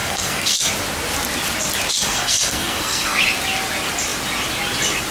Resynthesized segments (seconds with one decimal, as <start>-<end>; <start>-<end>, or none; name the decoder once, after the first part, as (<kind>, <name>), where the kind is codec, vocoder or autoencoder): 0.0-0.7 (codec, SNAC); 1.9-3.2